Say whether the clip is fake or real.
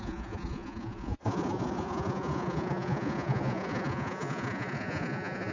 fake